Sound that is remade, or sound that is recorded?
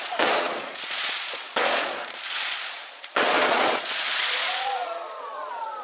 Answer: remade